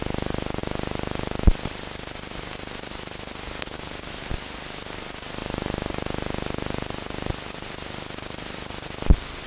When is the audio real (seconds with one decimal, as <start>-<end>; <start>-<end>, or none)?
0.0-9.5